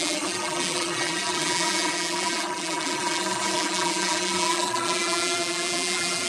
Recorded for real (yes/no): no